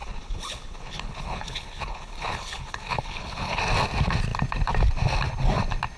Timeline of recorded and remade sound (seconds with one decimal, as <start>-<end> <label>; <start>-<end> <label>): 0.0-3.6 remade; 3.6-6.0 recorded